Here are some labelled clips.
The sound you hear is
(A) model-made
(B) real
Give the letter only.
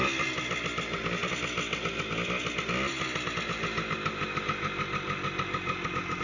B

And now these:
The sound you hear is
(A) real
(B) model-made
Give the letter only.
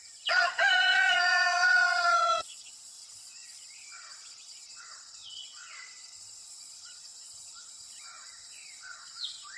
B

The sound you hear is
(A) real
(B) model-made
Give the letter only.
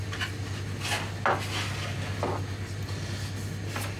A